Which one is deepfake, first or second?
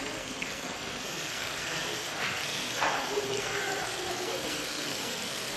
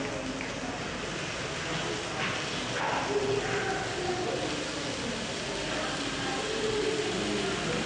first